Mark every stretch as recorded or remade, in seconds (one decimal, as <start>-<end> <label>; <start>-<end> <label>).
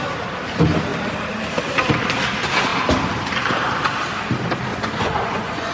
0.0-4.7 recorded; 4.7-5.7 remade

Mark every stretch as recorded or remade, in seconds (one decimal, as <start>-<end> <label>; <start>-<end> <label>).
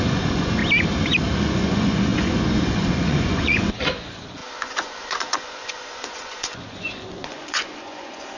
0.0-0.6 remade; 0.6-1.4 recorded; 1.4-8.4 remade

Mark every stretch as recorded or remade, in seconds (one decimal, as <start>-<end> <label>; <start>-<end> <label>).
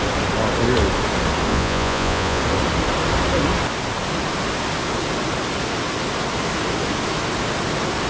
0.0-1.5 recorded; 1.5-2.4 remade; 2.4-8.1 recorded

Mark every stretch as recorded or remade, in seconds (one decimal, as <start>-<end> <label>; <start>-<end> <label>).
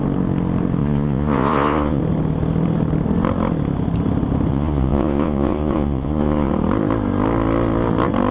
0.0-0.8 recorded; 0.8-2.0 remade; 2.0-4.5 recorded; 4.5-6.5 remade; 6.5-8.3 recorded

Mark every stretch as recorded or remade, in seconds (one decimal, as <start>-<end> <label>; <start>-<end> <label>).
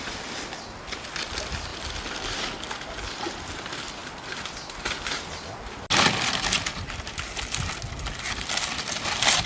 0.0-9.5 recorded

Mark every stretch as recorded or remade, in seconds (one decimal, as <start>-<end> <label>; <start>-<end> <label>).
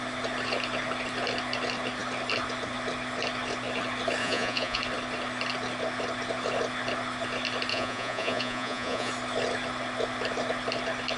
0.0-4.2 recorded; 4.2-4.8 remade; 4.8-7.7 recorded; 7.7-9.1 remade; 9.1-11.2 recorded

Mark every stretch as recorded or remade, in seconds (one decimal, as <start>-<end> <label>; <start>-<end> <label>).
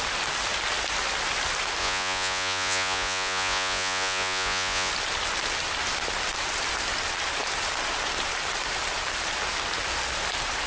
0.0-1.8 recorded; 1.8-4.9 remade; 4.9-10.7 recorded